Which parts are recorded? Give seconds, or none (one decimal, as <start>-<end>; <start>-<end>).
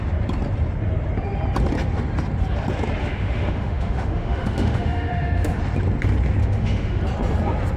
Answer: 0.0-3.0; 5.6-6.4; 7.0-7.8